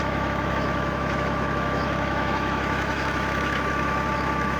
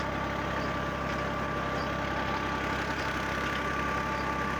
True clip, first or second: second